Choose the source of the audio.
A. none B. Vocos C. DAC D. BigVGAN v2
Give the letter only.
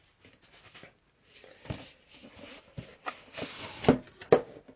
A